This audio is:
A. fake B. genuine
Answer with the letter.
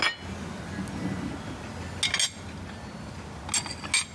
B